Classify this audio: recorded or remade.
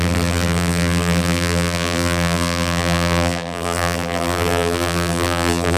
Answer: remade